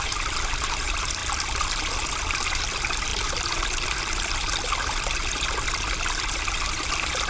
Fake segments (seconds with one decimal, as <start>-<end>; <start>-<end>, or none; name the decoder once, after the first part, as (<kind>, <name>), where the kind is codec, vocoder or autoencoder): 0.0-1.2 (vocoder, BigVGAN v2); 1.9-7.3